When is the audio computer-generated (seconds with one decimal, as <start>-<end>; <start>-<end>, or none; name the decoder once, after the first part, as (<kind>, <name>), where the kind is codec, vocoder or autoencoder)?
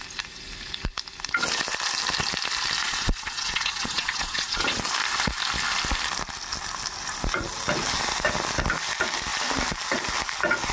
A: 2.8-4.8 (vocoder, Vocos)